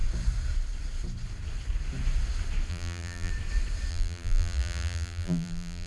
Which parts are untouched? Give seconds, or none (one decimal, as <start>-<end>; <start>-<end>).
0.0-2.7; 3.3-3.9